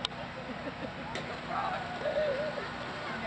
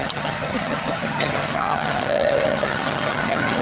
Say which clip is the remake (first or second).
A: second